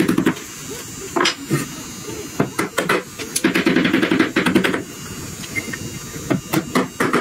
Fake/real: real